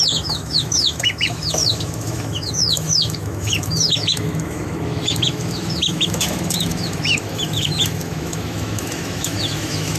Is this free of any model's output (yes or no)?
no